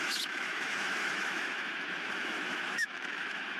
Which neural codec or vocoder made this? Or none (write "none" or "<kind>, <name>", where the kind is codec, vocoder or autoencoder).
autoencoder, DAC-VAE